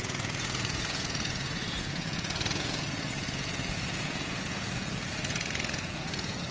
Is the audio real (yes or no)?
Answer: no